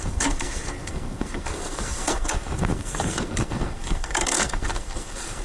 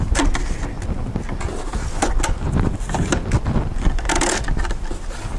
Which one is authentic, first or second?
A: second